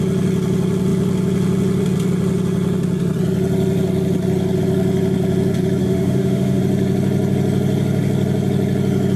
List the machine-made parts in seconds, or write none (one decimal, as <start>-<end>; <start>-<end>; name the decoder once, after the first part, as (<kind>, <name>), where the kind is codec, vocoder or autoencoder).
5.8-6.6 (autoencoder, DAC-VAE)